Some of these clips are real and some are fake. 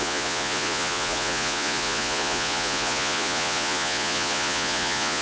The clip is fake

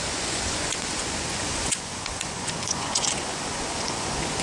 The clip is fake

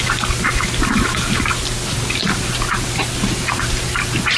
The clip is real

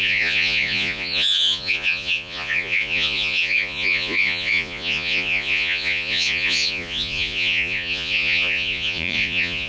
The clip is fake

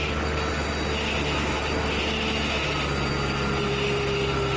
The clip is real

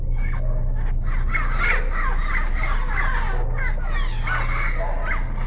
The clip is real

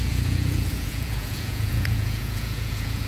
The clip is fake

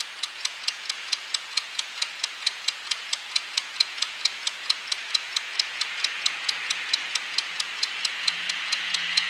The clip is fake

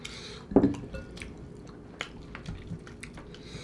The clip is real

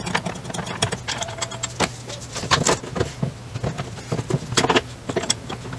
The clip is real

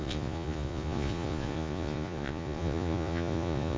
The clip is fake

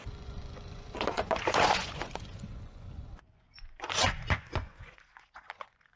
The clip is fake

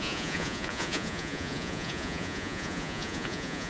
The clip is fake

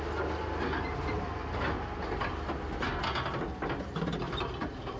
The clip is real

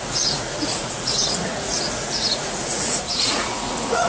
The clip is fake